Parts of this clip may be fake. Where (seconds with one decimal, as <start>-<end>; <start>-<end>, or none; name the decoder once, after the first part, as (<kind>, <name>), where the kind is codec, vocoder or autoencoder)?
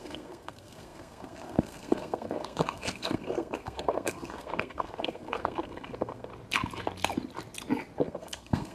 0.0-6.3 (codec, SNAC); 8.0-8.7